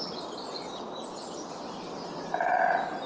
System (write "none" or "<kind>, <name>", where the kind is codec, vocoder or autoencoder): none